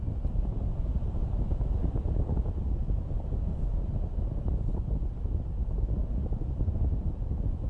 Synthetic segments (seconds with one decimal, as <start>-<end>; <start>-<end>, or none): none